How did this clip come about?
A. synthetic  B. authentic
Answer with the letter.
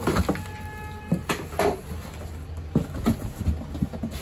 B